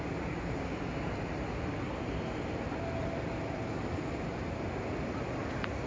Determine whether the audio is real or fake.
real